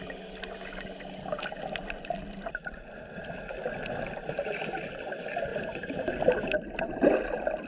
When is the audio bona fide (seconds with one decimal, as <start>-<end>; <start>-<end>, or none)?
0.0-5.5; 6.1-7.7

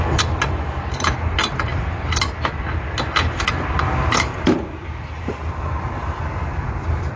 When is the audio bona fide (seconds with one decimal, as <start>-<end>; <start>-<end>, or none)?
0.0-1.7; 2.6-4.3; 5.5-7.2